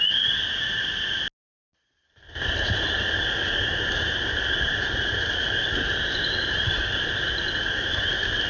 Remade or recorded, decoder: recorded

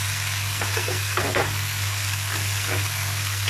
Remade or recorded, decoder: remade, codec, SNAC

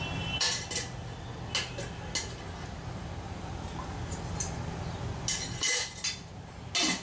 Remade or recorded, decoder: recorded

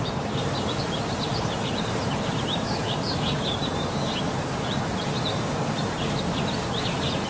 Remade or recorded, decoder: remade, vocoder, BigVGAN v2